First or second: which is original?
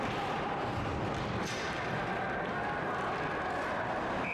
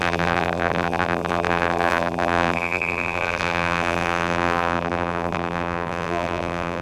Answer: first